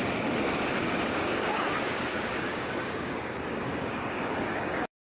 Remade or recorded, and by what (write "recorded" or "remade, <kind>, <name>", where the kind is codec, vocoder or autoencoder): remade, codec, DAC